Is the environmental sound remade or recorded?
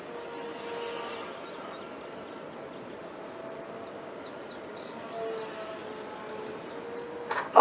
recorded